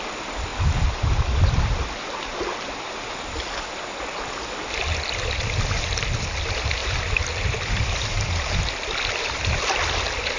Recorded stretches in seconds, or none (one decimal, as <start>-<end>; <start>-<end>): 0.0-6.8; 7.8-10.4